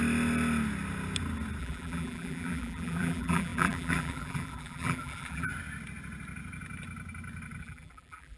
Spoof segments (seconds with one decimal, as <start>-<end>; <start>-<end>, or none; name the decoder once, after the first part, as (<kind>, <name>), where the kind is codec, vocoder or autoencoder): 1.6-5.5 (vocoder, BigVGAN v2); 7.6-8.4